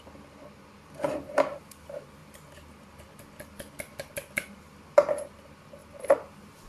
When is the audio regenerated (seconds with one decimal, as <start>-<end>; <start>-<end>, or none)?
0.0-2.2; 4.1-5.8